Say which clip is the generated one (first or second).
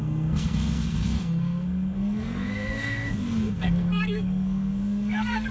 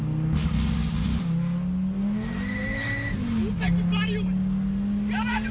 first